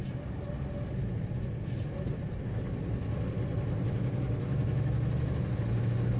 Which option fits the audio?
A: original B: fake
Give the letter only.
A